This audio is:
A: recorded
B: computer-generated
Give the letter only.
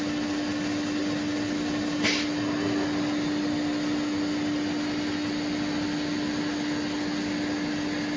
A